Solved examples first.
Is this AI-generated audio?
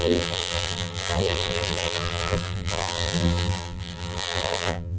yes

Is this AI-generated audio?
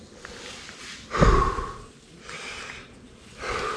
no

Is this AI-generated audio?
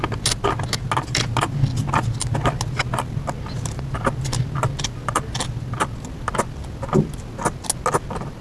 no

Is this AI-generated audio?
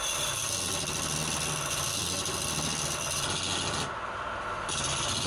no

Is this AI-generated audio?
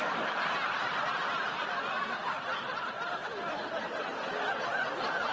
no